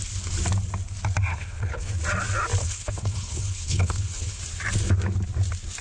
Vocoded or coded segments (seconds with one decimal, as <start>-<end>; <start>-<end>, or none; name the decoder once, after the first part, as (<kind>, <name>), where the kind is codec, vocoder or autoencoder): 1.3-1.9 (codec, HILCodec); 2.6-4.4

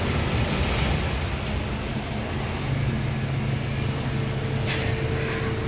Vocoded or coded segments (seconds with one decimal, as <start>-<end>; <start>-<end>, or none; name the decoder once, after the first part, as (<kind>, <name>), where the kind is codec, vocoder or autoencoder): none

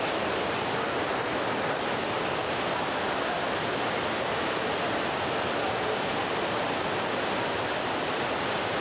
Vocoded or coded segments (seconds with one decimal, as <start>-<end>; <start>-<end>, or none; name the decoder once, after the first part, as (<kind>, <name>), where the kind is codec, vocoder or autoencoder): none

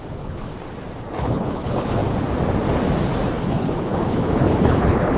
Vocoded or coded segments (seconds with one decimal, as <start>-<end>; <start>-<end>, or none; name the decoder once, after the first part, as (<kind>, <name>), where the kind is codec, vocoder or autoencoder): 0.0-0.5 (codec, HILCodec); 1.2-2.0; 3.3-5.2

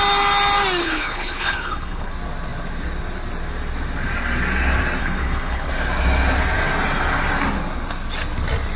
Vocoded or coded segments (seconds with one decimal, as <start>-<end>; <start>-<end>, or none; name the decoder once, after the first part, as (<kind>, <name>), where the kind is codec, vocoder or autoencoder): 0.8-2.1 (codec, HILCodec); 5.0-5.7

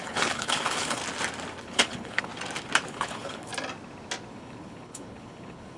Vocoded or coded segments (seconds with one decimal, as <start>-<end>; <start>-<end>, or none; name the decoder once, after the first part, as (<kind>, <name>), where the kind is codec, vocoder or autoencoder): 0.0-1.0 (codec, HILCodec); 1.6-2.3; 2.9-3.5; 4.3-5.8